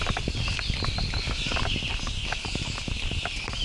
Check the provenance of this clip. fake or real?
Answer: real